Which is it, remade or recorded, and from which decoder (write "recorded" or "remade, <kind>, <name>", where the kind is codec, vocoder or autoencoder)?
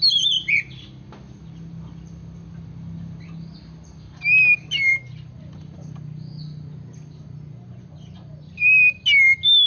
recorded